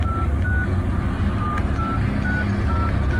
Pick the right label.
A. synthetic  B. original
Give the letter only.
B